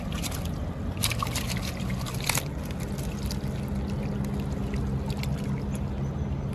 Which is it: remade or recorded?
recorded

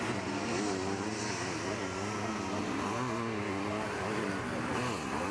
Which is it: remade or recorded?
recorded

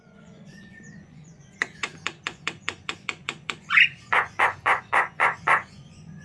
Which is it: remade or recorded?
remade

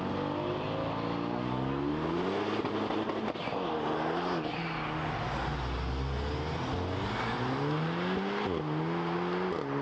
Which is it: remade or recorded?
recorded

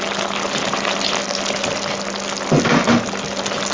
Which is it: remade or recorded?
recorded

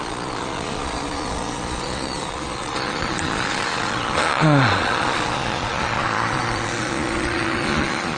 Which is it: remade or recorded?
remade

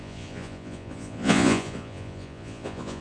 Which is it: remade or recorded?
remade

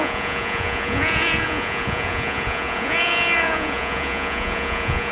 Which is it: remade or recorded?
remade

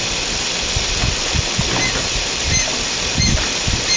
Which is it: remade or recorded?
recorded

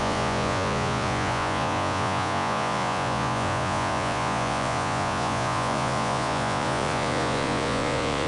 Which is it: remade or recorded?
remade